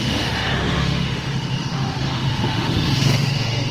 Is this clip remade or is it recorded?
remade